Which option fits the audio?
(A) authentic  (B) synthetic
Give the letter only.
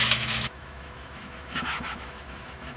B